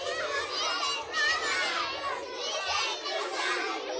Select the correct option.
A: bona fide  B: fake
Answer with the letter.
A